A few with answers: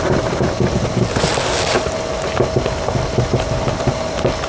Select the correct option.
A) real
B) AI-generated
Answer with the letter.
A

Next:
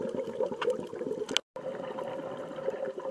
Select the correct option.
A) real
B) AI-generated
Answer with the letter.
A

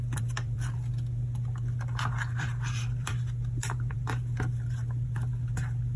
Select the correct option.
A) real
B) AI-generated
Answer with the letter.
B